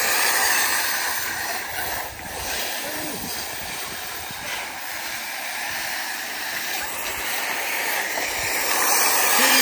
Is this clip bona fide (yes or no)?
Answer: no